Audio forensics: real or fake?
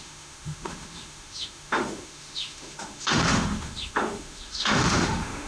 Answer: fake